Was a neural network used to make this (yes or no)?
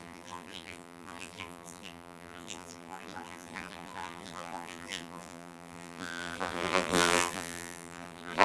yes